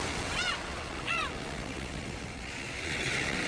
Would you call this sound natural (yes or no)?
no